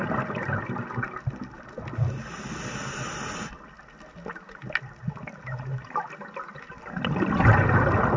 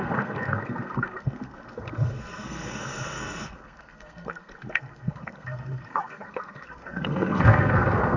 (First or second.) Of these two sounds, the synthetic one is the second